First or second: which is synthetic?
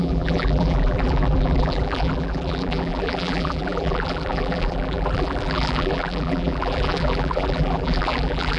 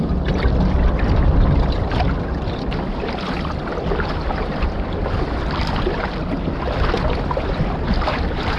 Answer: first